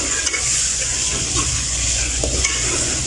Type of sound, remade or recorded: remade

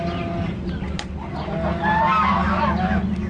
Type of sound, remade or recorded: recorded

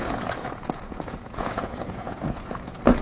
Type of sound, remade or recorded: remade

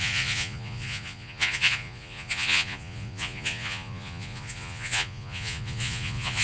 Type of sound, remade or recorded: remade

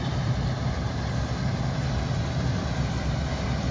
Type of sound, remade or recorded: recorded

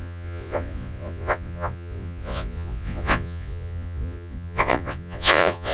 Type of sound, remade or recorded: remade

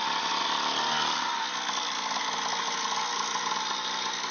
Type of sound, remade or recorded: recorded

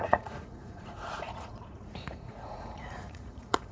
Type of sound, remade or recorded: remade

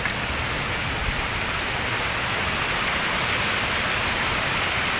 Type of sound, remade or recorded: recorded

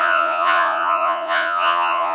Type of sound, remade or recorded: remade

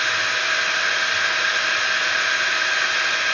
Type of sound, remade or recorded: recorded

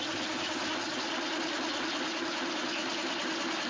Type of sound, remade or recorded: recorded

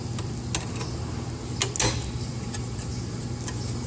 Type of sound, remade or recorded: recorded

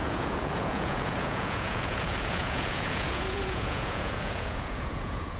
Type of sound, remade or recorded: remade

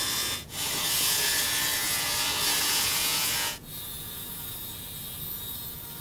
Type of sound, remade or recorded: remade